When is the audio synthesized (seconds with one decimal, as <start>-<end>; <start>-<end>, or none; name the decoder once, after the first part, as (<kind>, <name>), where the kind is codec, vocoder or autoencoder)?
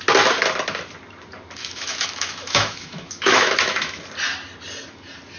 1.6-4.0 (autoencoder, DAC-VAE)